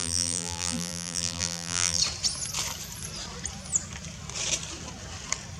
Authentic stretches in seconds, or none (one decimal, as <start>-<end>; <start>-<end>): 2.0-5.6